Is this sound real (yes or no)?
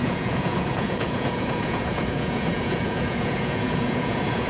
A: no